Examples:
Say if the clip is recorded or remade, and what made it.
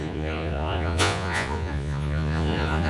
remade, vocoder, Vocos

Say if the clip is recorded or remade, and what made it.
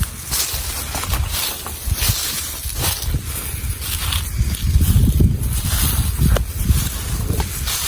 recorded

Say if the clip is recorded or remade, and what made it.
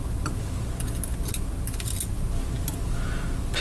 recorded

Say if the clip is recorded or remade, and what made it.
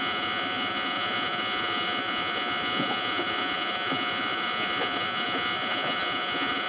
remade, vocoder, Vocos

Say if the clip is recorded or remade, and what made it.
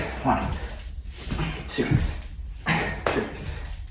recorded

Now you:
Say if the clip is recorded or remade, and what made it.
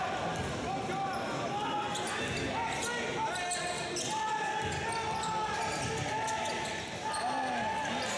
recorded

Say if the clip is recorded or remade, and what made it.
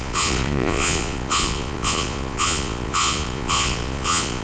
remade, vocoder, Vocos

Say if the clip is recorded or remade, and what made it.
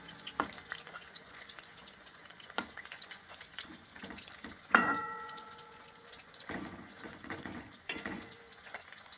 remade, vocoder, Vocos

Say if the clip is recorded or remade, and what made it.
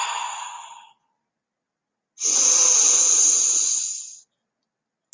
recorded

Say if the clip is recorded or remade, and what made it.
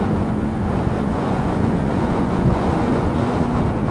remade, vocoder, Vocos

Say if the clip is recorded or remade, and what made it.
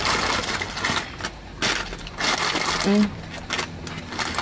recorded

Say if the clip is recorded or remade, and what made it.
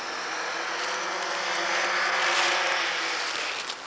recorded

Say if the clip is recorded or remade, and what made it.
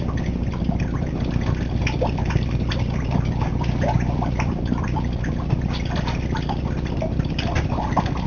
recorded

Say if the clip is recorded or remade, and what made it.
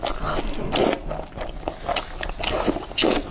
recorded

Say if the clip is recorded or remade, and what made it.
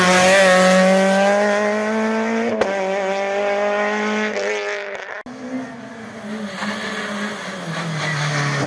recorded